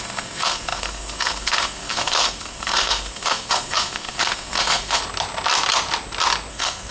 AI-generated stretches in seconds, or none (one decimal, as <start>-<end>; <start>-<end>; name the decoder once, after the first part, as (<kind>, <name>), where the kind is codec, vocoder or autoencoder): 0.0-5.0 (codec, SNAC); 6.5-6.9